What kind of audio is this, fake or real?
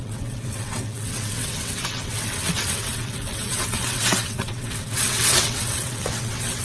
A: fake